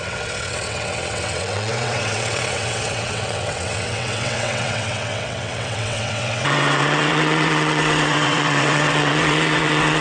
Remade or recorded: remade